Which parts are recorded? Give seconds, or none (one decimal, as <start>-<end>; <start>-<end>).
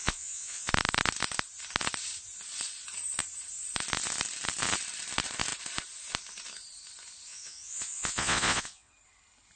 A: 0.7-7.3; 8.9-9.6